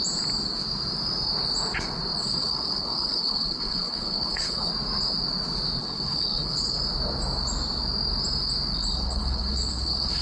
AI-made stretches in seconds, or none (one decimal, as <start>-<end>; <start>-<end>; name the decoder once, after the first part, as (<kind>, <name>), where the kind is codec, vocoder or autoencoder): 2.2-4.7 (codec, HILCodec); 5.8-6.8; 8.8-10.2